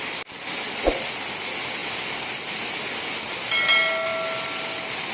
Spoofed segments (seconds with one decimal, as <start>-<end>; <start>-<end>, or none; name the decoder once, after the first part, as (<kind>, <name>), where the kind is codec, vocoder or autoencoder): none